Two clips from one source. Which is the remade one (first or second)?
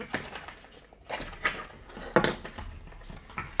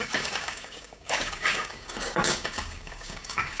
second